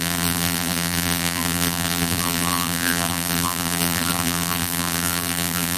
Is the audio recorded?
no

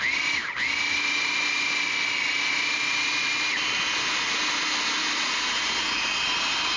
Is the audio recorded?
yes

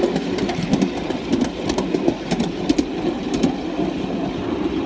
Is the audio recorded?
yes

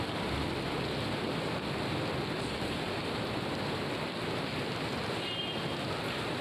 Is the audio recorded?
yes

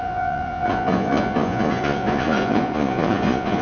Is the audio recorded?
no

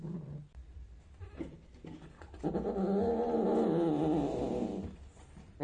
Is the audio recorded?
yes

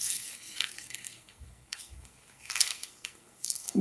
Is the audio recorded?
no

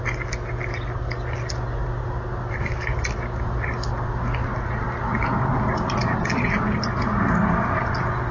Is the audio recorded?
yes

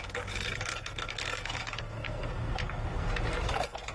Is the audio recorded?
no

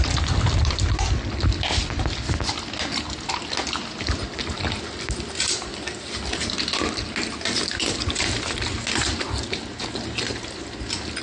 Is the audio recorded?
yes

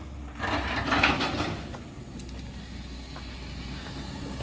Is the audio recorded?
yes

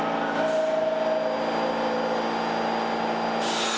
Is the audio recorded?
yes